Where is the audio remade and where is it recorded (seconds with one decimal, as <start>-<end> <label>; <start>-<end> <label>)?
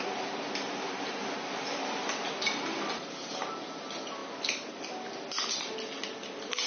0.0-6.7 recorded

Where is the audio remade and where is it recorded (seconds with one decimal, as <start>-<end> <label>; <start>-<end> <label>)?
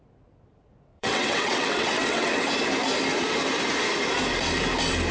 0.0-0.9 recorded; 0.9-2.5 remade; 2.5-5.1 recorded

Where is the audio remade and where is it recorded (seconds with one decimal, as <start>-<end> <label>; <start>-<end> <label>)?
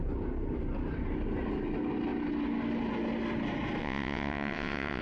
0.0-3.8 recorded; 3.8-5.0 remade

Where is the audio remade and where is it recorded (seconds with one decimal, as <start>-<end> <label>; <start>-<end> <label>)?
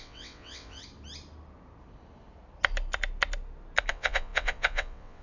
0.0-0.8 remade; 0.8-3.9 recorded; 3.9-5.2 remade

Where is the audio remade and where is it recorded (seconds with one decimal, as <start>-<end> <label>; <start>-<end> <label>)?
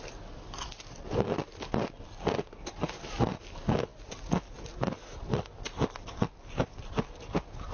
0.0-7.7 recorded